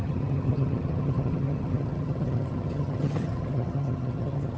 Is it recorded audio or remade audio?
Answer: remade